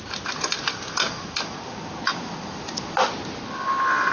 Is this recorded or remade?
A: recorded